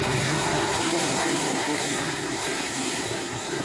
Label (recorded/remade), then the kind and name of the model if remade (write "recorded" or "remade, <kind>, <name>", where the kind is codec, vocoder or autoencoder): remade, codec, SNAC